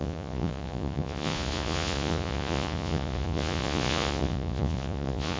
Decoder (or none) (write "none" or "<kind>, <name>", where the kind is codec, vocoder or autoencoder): vocoder, Vocos